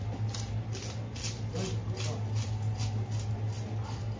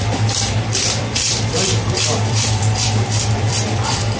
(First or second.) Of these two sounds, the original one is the first